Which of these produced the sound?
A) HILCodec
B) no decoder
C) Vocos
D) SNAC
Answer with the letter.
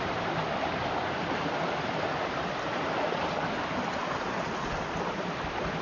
B